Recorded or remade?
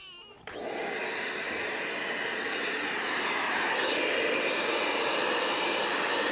recorded